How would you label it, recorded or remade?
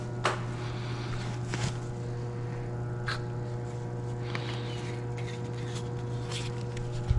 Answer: recorded